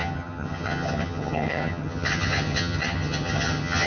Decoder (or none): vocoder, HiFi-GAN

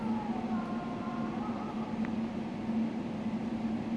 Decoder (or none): none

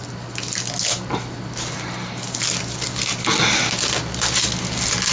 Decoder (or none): none